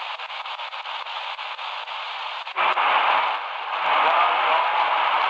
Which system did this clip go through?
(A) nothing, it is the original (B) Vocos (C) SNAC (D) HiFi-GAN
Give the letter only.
A